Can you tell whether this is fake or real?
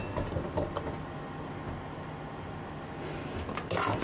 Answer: real